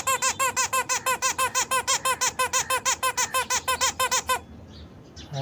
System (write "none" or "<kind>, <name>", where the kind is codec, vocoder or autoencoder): none